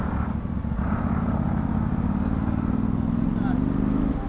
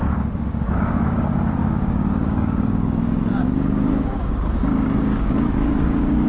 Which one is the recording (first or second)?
first